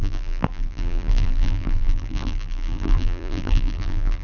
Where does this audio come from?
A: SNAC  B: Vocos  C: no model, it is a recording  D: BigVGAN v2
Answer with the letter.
D